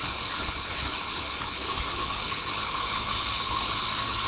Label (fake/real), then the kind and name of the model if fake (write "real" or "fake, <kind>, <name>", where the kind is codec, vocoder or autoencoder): fake, codec, HILCodec